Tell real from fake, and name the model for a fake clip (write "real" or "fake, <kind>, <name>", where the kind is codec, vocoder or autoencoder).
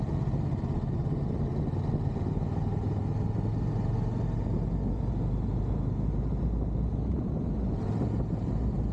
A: real